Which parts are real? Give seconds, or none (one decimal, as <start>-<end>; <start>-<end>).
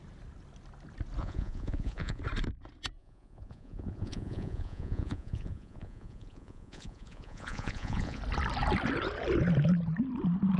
0.0-1.2; 2.2-3.0; 8.2-10.6